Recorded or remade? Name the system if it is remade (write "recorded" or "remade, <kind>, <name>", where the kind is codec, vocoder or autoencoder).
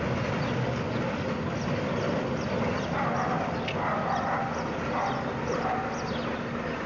recorded